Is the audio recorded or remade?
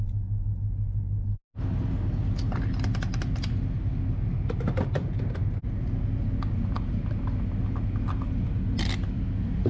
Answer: recorded